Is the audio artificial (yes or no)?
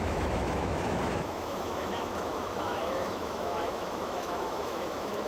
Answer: yes